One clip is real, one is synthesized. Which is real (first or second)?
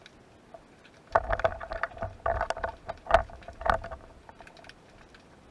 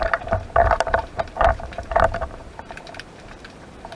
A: first